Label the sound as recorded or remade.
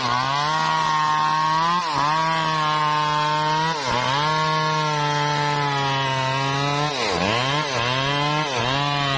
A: recorded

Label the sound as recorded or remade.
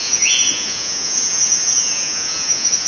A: remade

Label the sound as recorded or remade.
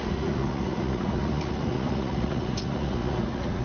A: remade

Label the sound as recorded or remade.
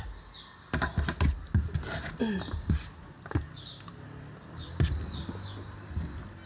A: recorded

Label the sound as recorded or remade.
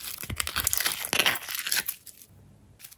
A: recorded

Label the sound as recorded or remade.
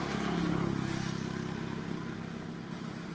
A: recorded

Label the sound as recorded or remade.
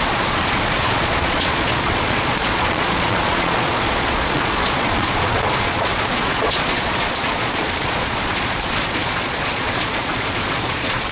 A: remade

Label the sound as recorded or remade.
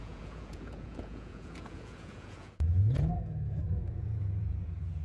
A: remade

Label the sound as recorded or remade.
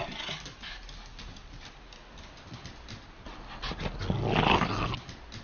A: recorded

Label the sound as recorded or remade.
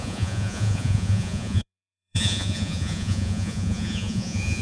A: remade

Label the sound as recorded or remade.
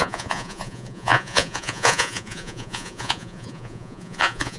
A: remade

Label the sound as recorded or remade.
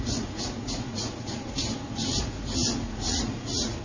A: remade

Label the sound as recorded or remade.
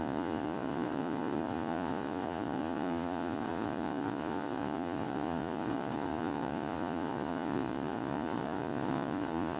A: remade